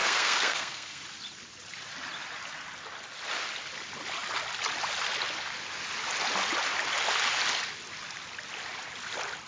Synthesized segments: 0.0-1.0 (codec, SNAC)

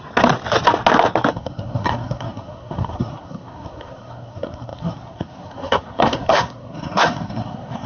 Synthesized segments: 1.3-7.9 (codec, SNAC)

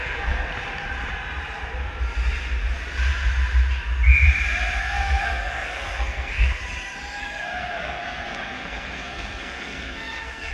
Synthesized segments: 0.0-0.5 (codec, SNAC); 4.8-6.6; 7.2-10.5

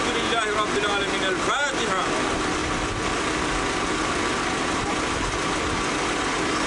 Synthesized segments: none

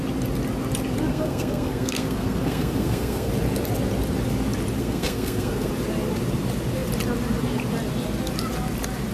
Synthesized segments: 1.1-3.3 (codec, SNAC); 4.8-5.7

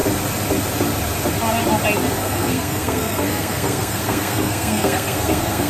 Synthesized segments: 2.2-5.7 (codec, SNAC)